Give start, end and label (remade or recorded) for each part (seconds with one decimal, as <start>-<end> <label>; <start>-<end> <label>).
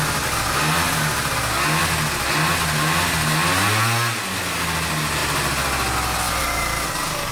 0.0-7.3 recorded